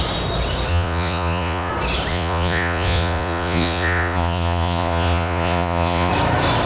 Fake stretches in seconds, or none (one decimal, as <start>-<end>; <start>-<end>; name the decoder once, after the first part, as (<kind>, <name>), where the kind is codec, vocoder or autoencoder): 0.7-1.7 (vocoder, Vocos); 2.1-6.1